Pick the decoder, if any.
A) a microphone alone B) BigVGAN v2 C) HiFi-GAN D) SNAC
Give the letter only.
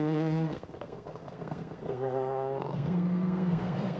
D